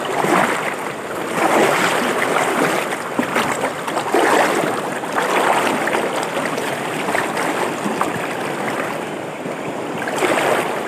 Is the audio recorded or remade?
remade